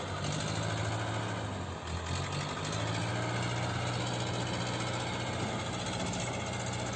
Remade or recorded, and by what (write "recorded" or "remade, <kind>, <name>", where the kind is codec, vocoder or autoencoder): recorded